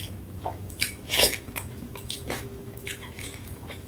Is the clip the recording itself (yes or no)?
no